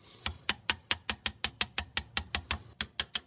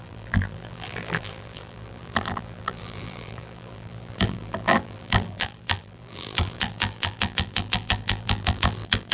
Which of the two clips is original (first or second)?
first